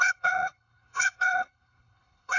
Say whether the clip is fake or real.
fake